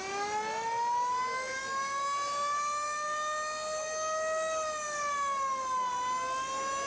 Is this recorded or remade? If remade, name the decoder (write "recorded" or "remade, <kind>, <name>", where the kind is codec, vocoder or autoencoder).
recorded